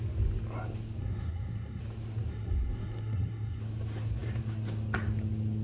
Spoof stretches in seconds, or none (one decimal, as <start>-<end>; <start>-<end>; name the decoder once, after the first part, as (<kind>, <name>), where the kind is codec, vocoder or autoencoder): 1.0-1.8 (codec, SNAC); 2.3-3.6